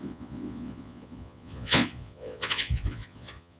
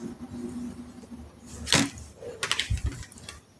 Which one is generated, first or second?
first